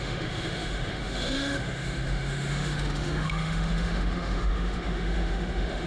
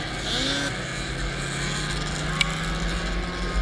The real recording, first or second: second